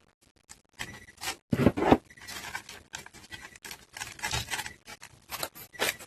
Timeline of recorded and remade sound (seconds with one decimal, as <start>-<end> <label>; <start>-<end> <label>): 0.0-6.1 recorded